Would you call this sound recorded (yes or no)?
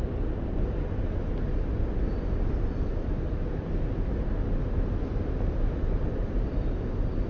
yes